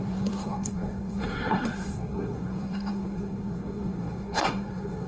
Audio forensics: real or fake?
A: fake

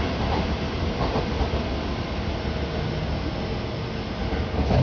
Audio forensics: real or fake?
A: real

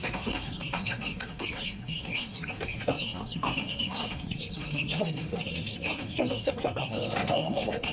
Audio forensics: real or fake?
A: fake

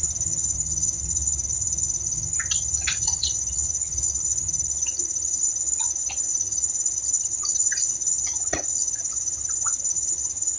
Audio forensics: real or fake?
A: fake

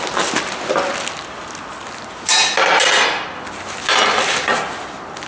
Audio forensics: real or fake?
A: real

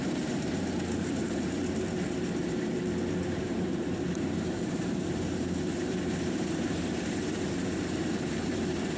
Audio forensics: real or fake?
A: fake